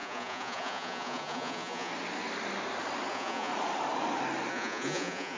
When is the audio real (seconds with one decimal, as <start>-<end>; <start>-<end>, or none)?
1.9-3.1; 3.5-4.5